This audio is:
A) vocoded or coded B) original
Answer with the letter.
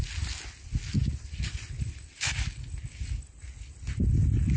B